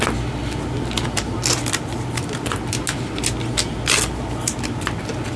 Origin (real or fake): real